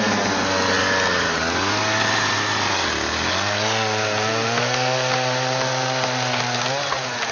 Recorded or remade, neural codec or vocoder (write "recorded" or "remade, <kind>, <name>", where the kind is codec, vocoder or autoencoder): recorded